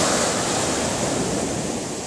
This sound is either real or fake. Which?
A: real